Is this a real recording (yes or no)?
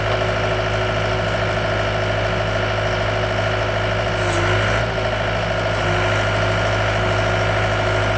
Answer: yes